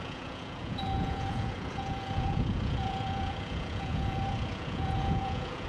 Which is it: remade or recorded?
remade